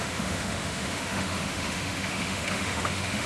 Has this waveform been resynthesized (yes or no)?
yes